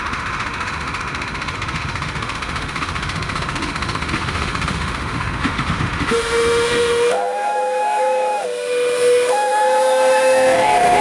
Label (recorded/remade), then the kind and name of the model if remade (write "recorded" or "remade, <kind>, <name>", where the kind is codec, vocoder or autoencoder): remade, autoencoder, DAC-VAE